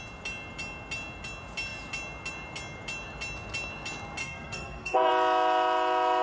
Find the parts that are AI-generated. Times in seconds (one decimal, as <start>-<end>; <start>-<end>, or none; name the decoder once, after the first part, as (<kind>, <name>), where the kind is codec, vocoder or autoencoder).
4.2-5.1 (codec, SNAC)